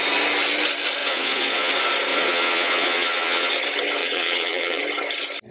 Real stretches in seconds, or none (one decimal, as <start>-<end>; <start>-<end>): 0.0-1.0; 1.7-2.1; 3.5-4.0; 4.8-5.5